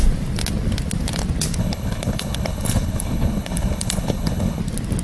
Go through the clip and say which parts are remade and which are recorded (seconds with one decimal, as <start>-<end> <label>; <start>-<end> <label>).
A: 0.0-1.6 recorded; 1.6-4.6 remade; 4.6-5.0 recorded

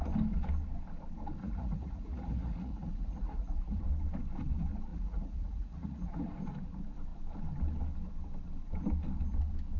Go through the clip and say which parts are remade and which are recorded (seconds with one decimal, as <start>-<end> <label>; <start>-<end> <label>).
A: 0.0-1.4 recorded; 1.4-3.8 remade; 3.8-4.9 recorded; 4.9-6.2 remade; 6.2-9.8 recorded

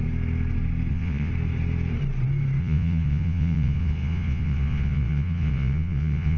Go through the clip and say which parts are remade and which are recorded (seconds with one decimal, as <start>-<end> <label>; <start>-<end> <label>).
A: 0.0-0.9 recorded; 0.9-1.3 remade; 1.3-2.6 recorded; 2.6-6.4 remade

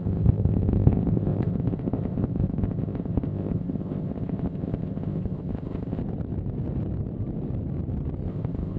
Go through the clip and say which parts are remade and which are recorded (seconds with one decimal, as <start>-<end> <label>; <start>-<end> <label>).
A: 0.0-6.0 remade; 6.0-8.3 recorded; 8.3-8.8 remade

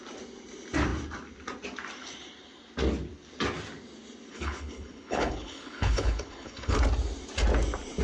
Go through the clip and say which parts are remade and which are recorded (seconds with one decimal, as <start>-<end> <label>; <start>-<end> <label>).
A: 0.0-4.3 recorded; 4.3-6.8 remade; 6.8-8.0 recorded

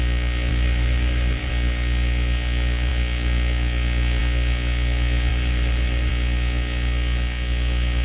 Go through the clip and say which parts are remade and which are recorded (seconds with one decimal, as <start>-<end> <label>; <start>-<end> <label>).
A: 0.0-0.5 recorded; 0.5-1.5 remade; 1.5-5.3 recorded; 5.3-6.1 remade; 6.1-8.0 recorded

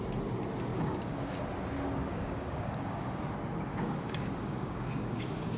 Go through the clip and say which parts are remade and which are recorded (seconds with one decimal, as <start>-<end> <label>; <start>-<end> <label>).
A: 0.0-0.7 recorded; 0.7-1.4 remade; 1.4-2.0 recorded; 2.0-3.2 remade; 3.2-3.7 recorded; 3.7-5.6 remade

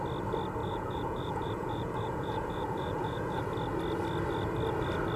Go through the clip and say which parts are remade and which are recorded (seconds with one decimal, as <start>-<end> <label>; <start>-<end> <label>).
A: 0.0-0.6 recorded; 0.6-3.4 remade; 3.4-5.2 recorded